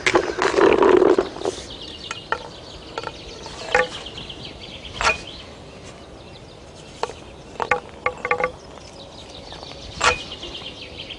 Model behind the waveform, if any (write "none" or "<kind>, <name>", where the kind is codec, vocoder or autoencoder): none